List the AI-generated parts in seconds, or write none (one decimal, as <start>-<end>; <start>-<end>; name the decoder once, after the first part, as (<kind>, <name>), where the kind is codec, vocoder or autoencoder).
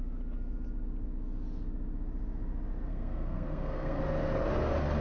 2.9-4.0 (codec, SNAC)